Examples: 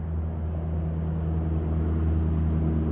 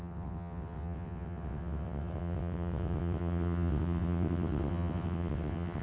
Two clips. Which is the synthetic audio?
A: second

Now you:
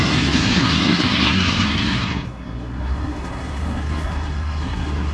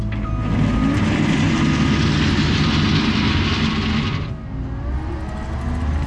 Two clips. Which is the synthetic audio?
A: first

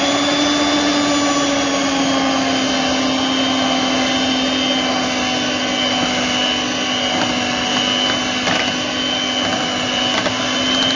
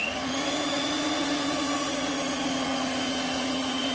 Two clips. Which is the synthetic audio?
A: second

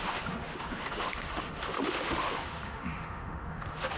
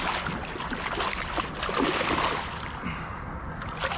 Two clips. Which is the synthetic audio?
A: first